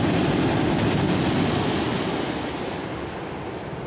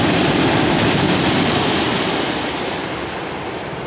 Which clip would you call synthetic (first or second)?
second